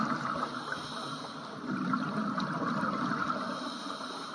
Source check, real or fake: real